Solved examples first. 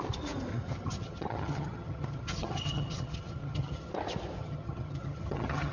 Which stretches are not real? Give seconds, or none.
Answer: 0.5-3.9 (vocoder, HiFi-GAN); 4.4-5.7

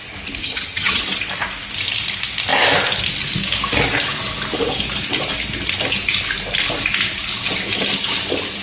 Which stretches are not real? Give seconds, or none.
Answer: 0.4-1.0 (vocoder, HiFi-GAN)

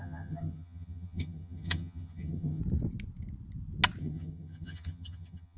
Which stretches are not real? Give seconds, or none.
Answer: 0.0-2.6 (vocoder, HiFi-GAN); 4.0-5.6

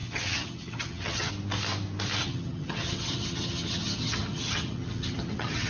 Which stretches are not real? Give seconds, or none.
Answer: 0.0-1.3 (vocoder, HiFi-GAN); 2.2-5.7

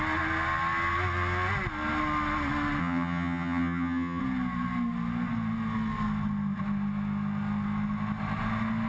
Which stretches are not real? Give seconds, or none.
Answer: 2.8-4.2 (vocoder, HiFi-GAN)

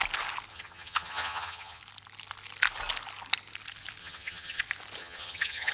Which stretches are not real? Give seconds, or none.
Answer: 0.5-1.8 (vocoder, HiFi-GAN); 4.0-4.6; 5.0-5.7

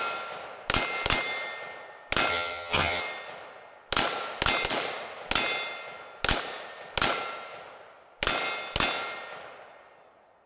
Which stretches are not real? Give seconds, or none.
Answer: 2.3-3.0 (vocoder, HiFi-GAN)